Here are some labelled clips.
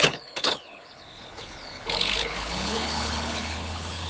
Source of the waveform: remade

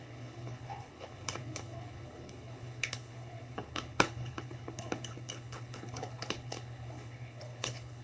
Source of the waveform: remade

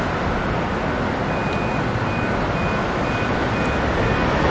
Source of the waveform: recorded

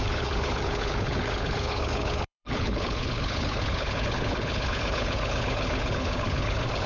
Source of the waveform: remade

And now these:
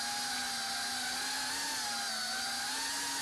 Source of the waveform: recorded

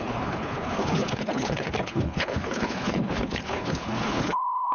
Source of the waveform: remade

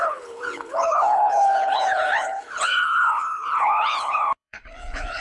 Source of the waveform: remade